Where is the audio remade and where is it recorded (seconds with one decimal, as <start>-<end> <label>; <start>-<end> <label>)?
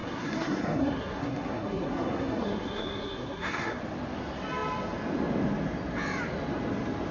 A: 0.0-3.8 remade; 3.8-7.1 recorded